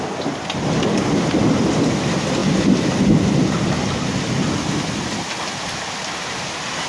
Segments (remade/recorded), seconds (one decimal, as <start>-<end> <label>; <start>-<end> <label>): 0.0-6.9 recorded